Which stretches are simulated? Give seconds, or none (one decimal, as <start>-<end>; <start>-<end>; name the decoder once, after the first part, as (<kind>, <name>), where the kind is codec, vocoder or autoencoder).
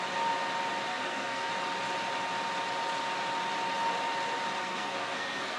0.9-1.5 (codec, SNAC); 4.6-5.6